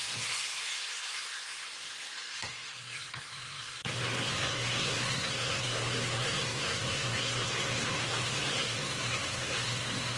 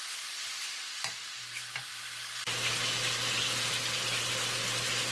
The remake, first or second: first